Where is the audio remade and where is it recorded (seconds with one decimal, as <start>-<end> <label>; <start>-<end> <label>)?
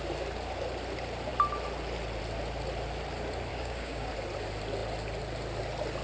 0.0-3.5 recorded; 3.5-4.1 remade; 4.1-6.0 recorded